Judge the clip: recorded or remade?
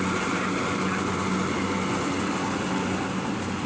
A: recorded